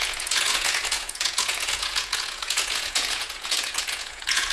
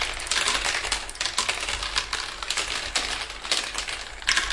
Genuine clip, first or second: second